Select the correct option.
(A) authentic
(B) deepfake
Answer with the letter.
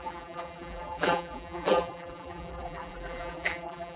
B